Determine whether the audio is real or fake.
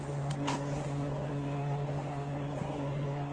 fake